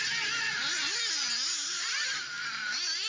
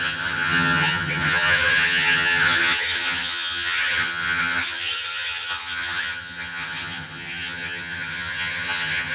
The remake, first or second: second